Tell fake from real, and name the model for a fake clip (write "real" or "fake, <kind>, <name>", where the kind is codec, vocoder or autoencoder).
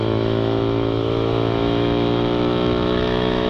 fake, autoencoder, DAC-VAE